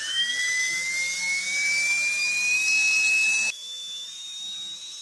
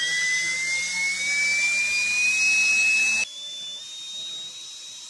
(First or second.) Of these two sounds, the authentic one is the second